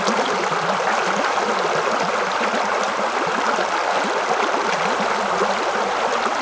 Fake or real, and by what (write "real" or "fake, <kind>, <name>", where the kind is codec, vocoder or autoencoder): real